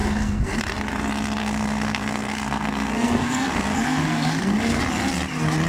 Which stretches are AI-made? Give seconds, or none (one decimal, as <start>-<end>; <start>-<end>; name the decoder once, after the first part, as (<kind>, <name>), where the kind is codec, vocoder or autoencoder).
0.0-0.6 (codec, SNAC); 1.4-4.8